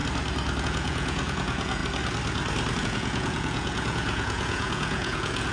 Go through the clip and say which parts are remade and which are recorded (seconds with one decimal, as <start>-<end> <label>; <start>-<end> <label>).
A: 0.0-0.6 recorded; 0.6-1.8 remade; 1.8-2.8 recorded; 2.8-5.5 remade